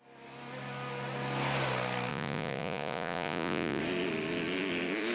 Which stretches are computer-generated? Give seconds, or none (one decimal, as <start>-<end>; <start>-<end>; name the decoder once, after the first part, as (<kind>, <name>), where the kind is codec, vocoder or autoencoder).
2.1-3.8 (vocoder, Vocos)